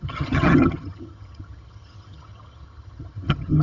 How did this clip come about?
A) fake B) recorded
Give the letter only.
A